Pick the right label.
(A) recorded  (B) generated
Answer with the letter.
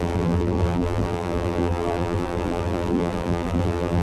B